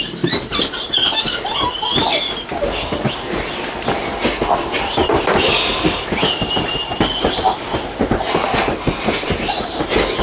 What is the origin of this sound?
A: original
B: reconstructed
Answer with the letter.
A